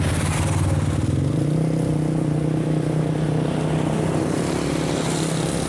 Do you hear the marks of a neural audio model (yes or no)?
no